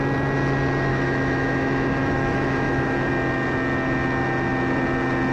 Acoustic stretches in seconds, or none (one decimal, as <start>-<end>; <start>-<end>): 0.0-0.9; 3.1-5.3

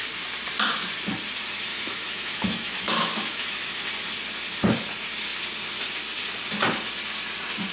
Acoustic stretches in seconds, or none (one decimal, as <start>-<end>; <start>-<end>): 0.0-1.7; 3.8-7.7

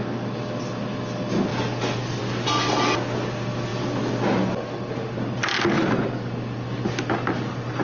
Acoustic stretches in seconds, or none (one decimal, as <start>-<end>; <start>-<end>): 0.0-7.8

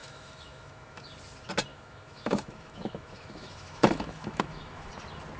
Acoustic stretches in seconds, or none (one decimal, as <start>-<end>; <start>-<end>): 1.1-1.7; 4.9-5.4

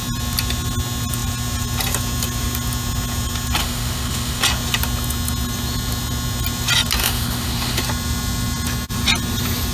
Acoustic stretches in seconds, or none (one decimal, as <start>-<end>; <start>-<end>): 0.0-3.6; 4.4-7.0; 7.8-9.7

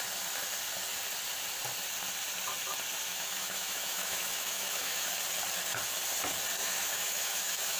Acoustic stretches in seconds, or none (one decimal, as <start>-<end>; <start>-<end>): 0.0-3.1; 5.1-6.6